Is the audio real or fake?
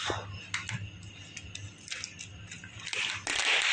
real